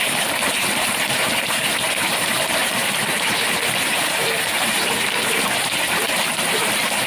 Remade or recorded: remade